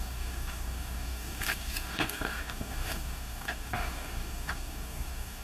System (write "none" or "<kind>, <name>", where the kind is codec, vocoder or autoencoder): codec, DAC